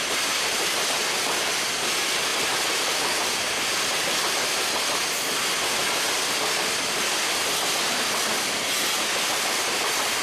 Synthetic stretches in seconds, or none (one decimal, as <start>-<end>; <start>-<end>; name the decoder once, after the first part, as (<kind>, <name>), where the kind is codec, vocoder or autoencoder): none